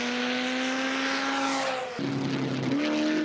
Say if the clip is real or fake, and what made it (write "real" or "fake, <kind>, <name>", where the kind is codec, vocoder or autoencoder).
real